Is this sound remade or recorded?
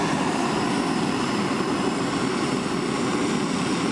recorded